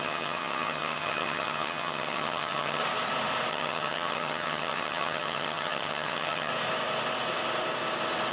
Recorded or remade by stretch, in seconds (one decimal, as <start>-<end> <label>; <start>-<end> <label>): 0.0-2.8 remade; 2.8-3.5 recorded; 3.5-6.5 remade; 6.5-8.3 recorded